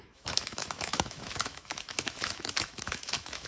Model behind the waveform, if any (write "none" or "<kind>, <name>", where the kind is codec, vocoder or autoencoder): autoencoder, DAC-VAE